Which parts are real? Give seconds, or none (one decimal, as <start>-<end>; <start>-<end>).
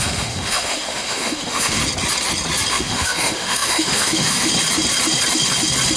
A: 1.8-2.7; 4.5-6.0